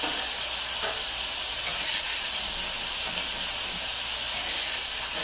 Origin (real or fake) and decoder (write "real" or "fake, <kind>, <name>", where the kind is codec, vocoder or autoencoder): real